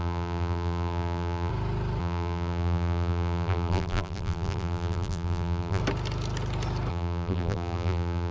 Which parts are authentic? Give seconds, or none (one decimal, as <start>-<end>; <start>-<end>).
1.5-2.0; 5.8-6.9